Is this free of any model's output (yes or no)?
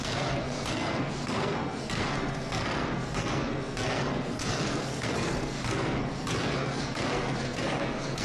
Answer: no